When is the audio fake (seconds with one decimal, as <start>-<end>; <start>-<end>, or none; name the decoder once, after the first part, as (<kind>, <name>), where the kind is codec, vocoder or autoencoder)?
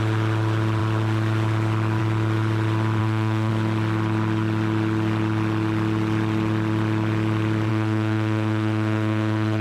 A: 3.0-3.5 (autoencoder, DAC-VAE); 7.7-9.6